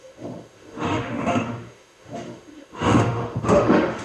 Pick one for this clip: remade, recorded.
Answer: remade